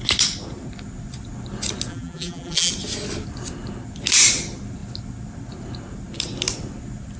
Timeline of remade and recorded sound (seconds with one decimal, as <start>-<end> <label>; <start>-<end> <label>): 0.0-1.9 recorded; 1.9-2.7 remade; 2.7-7.2 recorded